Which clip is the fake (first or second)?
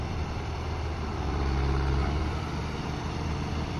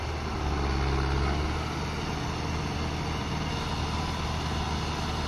first